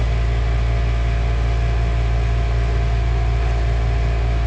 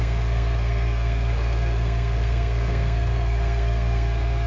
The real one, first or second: first